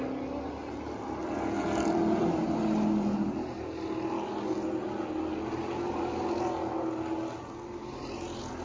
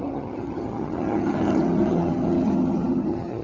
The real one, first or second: first